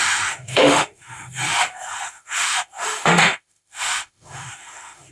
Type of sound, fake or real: fake